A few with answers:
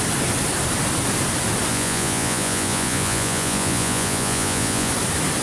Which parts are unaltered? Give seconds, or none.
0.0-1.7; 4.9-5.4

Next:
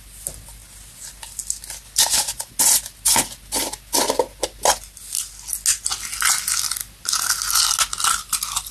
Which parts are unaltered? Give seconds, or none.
0.0-8.7

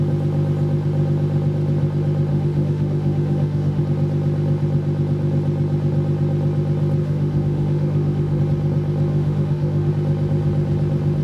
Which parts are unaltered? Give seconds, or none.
0.0-2.3; 3.8-7.0; 8.4-9.1; 9.9-11.2

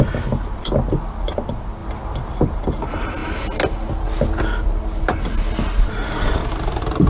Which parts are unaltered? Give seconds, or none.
0.0-7.1

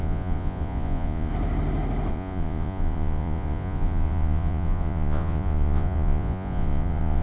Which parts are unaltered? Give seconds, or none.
1.3-2.1